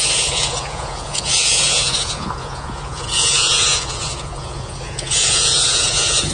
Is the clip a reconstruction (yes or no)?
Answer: yes